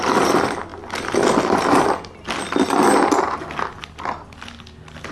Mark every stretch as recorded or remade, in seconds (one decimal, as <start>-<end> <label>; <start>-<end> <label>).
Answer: 0.0-5.1 recorded